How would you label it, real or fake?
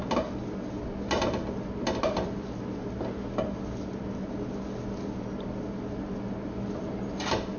real